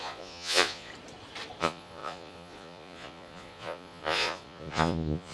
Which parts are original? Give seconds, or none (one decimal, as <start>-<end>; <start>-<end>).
0.9-1.6